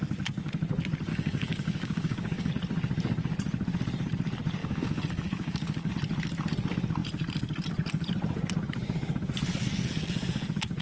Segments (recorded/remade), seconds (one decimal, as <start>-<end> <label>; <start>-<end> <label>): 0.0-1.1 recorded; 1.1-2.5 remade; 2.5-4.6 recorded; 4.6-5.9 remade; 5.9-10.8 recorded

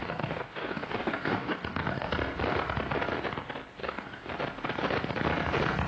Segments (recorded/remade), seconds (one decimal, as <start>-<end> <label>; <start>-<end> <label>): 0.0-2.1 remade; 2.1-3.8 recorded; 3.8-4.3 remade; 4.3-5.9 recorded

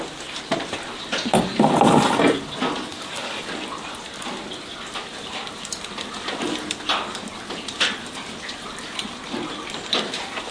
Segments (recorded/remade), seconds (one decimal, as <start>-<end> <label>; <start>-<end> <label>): 0.0-2.9 recorded; 2.9-3.5 remade; 3.5-10.5 recorded

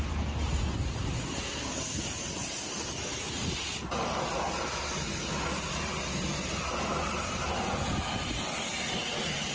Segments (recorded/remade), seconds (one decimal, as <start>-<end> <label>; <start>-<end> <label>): 0.0-9.5 recorded